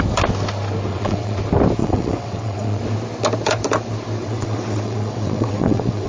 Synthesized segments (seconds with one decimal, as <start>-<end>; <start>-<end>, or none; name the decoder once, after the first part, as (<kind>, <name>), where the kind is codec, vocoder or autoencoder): 0.9-1.4 (vocoder, WaveNeXt); 1.8-2.8; 4.2-6.1

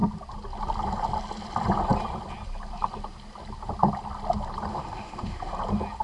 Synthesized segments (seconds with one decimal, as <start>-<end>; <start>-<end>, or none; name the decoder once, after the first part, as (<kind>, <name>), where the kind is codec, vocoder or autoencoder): 4.7-5.5 (autoencoder, DAC-VAE)

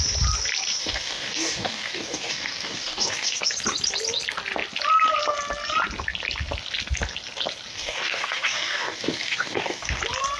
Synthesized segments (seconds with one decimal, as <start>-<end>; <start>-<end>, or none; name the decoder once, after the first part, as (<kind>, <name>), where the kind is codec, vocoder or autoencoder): 0.8-3.4 (codec, DAC); 7.7-10.0